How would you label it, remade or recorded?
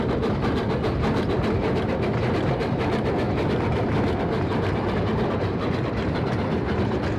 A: remade